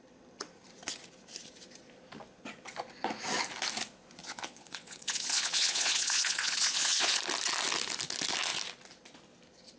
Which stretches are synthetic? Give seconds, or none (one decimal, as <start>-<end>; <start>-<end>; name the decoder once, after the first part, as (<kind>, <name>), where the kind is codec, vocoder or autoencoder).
4.2-7.2 (vocoder, Vocos)